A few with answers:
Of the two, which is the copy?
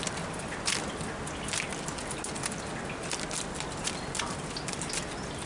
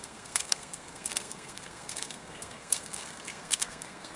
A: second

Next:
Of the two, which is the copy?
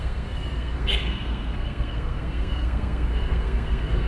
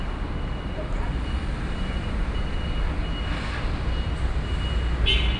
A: first